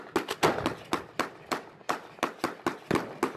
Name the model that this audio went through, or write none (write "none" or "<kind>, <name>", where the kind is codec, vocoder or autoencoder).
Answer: none